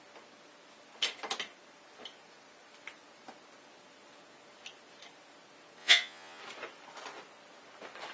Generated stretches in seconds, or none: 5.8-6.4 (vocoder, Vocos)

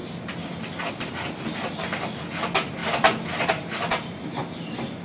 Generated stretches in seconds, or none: none

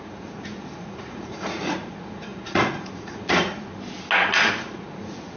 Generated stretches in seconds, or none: 0.0-3.7 (vocoder, Vocos); 4.6-5.4

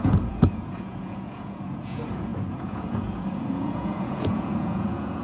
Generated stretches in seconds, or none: 0.0-5.2 (vocoder, Vocos)